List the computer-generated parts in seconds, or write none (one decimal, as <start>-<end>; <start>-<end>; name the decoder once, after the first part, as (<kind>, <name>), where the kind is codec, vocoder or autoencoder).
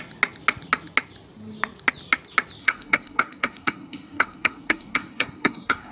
2.6-5.9 (codec, SNAC)